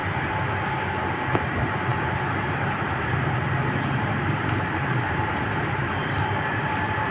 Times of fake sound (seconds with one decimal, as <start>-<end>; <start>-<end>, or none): 1.9-3.4; 4.0-5.9